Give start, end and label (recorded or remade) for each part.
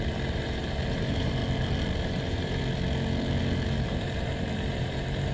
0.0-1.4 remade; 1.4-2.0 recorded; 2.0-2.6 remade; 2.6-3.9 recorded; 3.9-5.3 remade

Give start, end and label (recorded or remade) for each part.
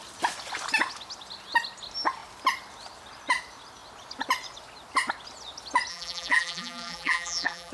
0.0-5.9 recorded; 5.9-7.7 remade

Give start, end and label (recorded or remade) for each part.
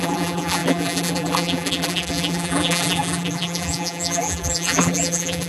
0.0-5.5 remade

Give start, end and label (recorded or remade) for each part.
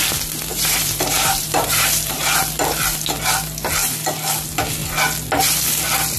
0.0-0.5 recorded; 0.5-2.4 remade; 2.4-6.2 recorded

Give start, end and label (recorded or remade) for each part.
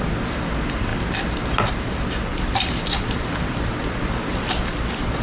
0.0-5.2 remade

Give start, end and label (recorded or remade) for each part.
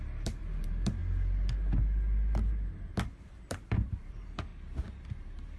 0.0-1.0 remade; 1.0-3.2 recorded; 3.2-4.5 remade; 4.5-5.0 recorded; 5.0-5.6 remade